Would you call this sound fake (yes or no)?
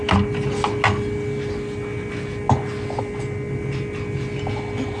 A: no